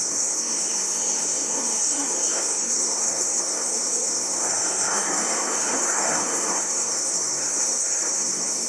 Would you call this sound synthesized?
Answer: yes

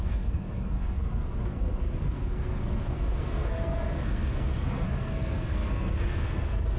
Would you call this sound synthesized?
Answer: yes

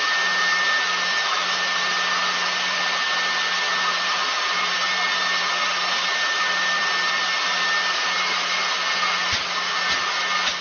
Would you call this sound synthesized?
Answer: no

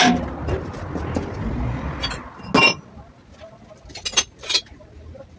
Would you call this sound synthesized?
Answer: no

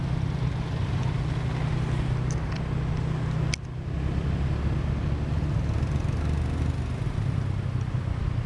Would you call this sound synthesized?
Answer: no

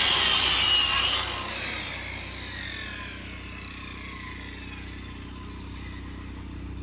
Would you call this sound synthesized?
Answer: no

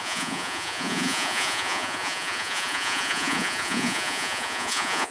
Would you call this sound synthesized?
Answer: yes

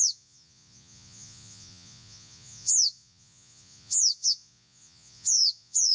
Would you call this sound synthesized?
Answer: yes